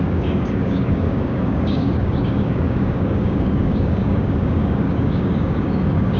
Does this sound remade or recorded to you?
remade